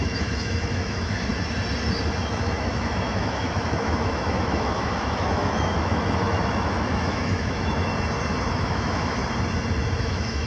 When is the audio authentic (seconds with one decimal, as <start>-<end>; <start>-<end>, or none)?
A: 1.3-2.3; 7.9-8.5; 9.2-10.0